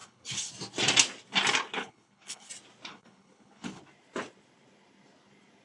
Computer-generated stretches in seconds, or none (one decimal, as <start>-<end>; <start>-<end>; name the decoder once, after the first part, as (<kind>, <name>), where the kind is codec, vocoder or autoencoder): 0.0-0.5 (codec, HILCodec); 1.8-2.5; 2.9-3.8